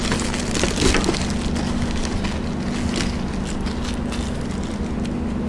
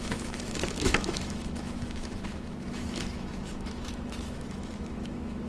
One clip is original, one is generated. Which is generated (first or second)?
second